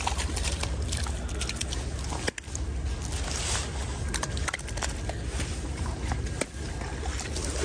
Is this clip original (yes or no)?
yes